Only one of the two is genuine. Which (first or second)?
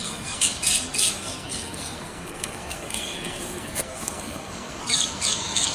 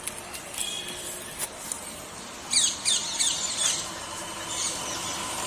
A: second